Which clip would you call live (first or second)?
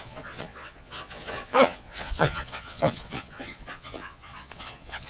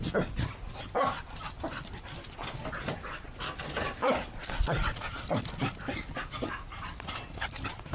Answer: second